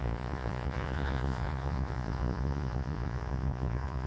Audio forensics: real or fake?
fake